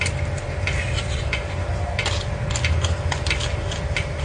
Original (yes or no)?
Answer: yes